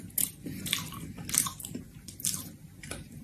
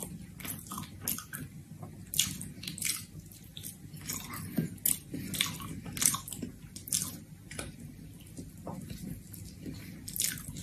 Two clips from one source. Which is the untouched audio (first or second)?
second